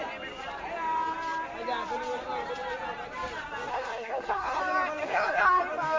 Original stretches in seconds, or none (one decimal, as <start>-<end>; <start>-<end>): 0.0-3.7; 4.6-5.0; 5.6-6.0